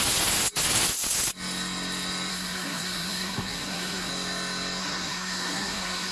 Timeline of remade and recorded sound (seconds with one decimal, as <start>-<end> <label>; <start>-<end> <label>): 0.0-2.3 recorded; 2.3-4.1 remade; 4.1-4.8 recorded; 4.8-6.1 remade